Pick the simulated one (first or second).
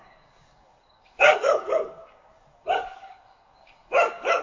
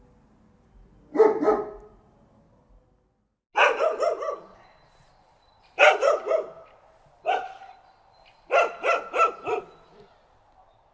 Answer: first